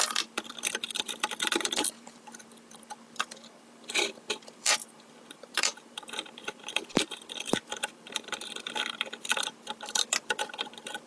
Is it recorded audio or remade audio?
remade